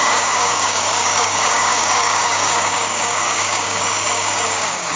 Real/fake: fake